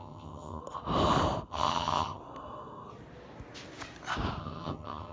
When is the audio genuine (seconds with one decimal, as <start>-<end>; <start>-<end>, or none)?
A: 0.6-1.5; 2.2-4.4